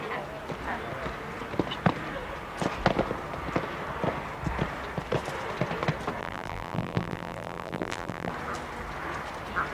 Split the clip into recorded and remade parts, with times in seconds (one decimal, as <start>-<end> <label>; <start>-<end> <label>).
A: 0.0-6.2 recorded; 6.2-8.3 remade; 8.3-9.7 recorded